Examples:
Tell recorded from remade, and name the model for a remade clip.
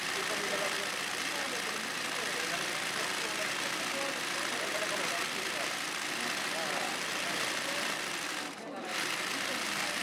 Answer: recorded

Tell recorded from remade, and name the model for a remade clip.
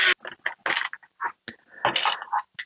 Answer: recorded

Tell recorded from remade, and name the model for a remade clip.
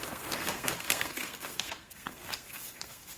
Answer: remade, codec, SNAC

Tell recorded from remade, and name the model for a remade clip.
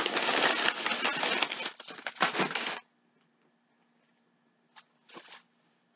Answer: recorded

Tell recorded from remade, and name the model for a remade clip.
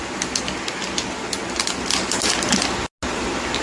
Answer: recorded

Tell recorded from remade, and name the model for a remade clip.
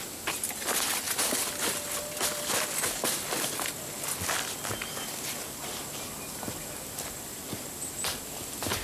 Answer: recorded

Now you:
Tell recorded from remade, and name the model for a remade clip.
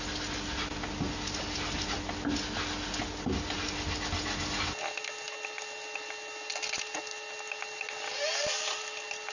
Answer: recorded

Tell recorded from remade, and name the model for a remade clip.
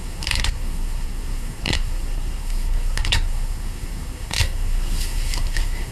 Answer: remade, codec, SNAC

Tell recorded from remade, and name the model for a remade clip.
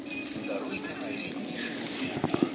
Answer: recorded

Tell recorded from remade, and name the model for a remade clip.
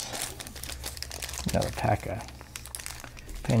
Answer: recorded